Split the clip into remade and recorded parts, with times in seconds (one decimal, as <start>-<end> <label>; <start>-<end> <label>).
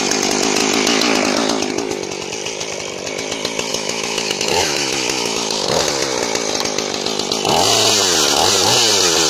0.0-3.7 recorded; 3.7-5.8 remade; 5.8-9.3 recorded